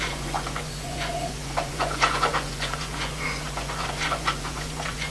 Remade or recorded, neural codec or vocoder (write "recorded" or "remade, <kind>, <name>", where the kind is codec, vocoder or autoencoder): remade, vocoder, Vocos